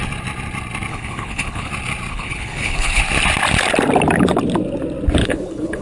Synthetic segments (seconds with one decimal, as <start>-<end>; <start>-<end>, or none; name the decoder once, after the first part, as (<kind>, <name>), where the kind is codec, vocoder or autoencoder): 0.9-1.7 (codec, HILCodec); 2.1-3.0; 5.2-5.8